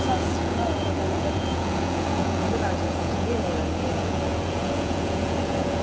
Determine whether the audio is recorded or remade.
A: remade